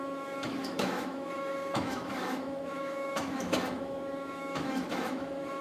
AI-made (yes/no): yes